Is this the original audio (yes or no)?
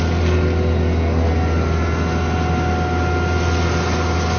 yes